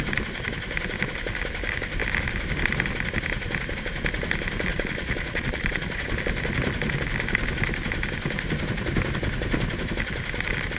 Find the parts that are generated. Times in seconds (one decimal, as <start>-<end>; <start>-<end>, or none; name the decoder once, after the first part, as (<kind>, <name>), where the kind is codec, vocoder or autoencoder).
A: 4.7-6.1 (vocoder, Vocos)